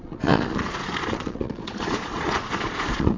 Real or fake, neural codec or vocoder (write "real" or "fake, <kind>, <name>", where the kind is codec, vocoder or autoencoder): fake, vocoder, Vocos